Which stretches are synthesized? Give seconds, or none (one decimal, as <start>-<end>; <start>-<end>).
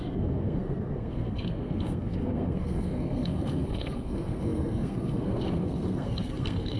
0.0-6.8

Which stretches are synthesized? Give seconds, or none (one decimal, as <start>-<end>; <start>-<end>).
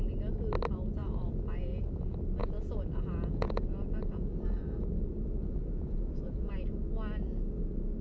1.0-1.8; 2.4-4.6; 5.4-6.5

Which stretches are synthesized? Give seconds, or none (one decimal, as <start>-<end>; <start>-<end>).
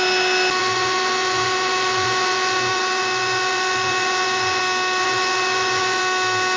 0.6-4.6; 5.0-6.0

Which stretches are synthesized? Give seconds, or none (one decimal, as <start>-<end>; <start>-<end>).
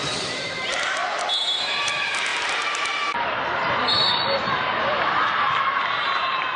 0.0-1.0; 1.6-6.6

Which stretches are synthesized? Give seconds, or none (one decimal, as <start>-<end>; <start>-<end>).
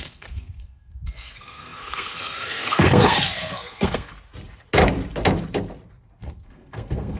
0.0-4.1; 6.2-7.2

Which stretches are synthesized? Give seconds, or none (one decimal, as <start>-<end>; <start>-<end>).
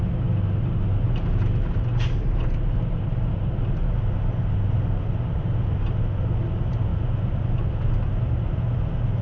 none